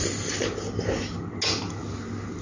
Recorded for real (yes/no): yes